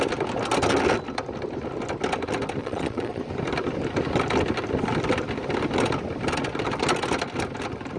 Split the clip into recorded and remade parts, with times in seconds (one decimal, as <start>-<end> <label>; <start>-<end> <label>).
0.0-2.6 recorded; 2.6-3.2 remade; 3.2-8.0 recorded